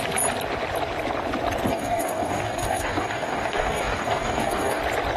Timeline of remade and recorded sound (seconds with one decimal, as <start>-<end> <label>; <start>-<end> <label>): 0.0-1.7 recorded; 1.7-4.8 remade; 4.8-5.2 recorded